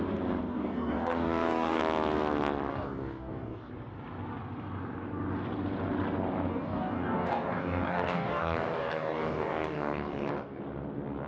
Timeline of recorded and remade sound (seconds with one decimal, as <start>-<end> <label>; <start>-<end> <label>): 0.0-0.5 recorded; 0.5-1.8 remade; 1.8-2.7 recorded; 2.7-3.7 remade; 3.7-6.5 recorded; 6.5-10.6 remade; 10.6-11.3 recorded